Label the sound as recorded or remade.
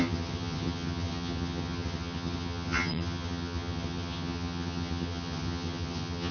remade